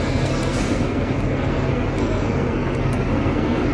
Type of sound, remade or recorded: remade